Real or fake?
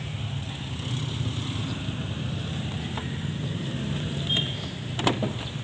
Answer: real